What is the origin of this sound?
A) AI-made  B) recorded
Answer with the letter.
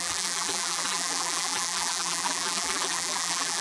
A